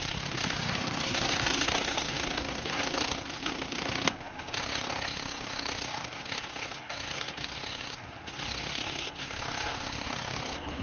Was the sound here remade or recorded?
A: remade